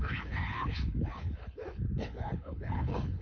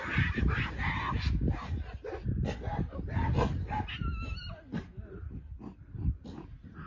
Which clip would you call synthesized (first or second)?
first